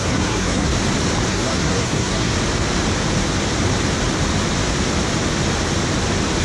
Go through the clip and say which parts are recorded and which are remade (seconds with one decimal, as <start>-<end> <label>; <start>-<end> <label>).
0.0-0.7 remade; 0.7-1.3 recorded; 1.3-2.3 remade; 2.3-6.4 recorded